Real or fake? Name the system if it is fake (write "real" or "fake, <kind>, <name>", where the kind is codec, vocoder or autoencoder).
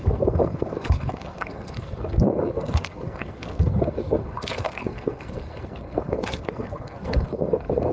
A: fake, codec, SNAC